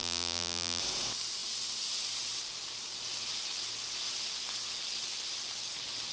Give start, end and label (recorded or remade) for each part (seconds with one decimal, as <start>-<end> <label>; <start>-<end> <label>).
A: 0.0-0.8 remade; 0.8-6.1 recorded